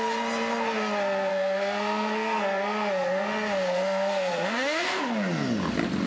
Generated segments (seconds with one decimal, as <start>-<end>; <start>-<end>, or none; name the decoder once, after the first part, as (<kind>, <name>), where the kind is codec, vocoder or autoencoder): 1.3-5.0 (codec, SNAC)